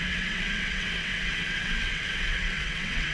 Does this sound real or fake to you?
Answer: fake